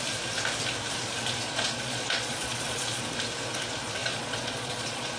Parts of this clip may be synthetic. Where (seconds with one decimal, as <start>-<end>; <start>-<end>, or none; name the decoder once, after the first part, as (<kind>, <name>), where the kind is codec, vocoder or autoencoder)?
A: 1.4-3.0 (vocoder, Vocos); 4.0-5.2

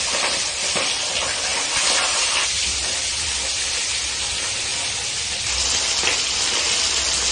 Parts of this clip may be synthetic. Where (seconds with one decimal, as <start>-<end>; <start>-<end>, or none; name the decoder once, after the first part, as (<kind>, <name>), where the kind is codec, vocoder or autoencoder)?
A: 4.7-5.8 (vocoder, BigVGAN v2)

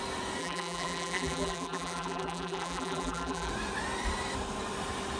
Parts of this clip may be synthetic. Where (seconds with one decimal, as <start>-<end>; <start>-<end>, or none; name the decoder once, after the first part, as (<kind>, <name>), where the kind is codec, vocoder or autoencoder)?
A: 0.4-3.5 (vocoder, BigVGAN v2)

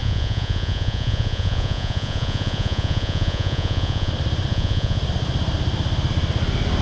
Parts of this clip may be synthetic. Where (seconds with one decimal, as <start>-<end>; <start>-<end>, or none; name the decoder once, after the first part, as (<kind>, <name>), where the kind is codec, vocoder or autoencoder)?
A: 0.0-4.1 (vocoder, Vocos); 4.5-5.0

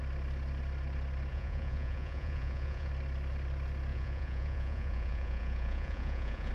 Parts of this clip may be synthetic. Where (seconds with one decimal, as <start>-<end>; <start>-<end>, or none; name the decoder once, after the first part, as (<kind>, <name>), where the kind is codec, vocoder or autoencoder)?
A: 1.3-2.9 (vocoder, Vocos); 3.9-6.5